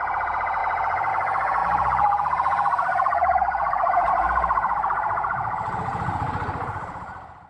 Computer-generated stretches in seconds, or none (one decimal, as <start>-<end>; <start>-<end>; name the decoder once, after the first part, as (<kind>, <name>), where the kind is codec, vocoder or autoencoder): 0.6-1.1 (vocoder, BigVGAN v2); 1.6-4.1; 5.9-6.9